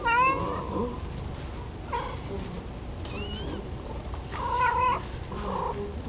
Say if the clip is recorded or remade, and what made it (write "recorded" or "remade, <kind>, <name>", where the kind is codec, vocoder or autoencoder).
recorded